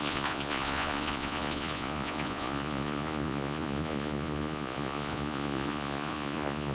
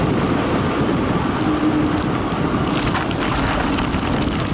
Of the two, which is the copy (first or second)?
first